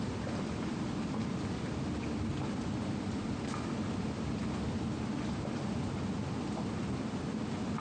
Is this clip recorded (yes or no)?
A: yes